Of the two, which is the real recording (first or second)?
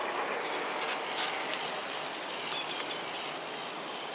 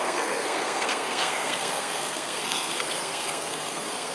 first